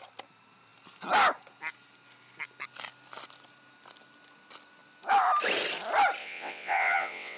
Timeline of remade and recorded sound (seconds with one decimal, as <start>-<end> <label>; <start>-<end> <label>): 0.0-6.2 recorded; 6.2-7.4 remade